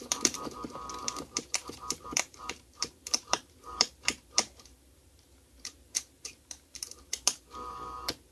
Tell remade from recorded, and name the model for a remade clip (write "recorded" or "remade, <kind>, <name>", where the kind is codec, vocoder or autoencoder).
remade, vocoder, BigVGAN v2